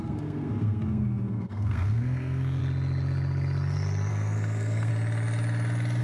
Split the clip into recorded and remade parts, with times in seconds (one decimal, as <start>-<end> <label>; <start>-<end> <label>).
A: 0.0-2.6 remade; 2.6-4.1 recorded; 4.1-4.9 remade; 4.9-6.0 recorded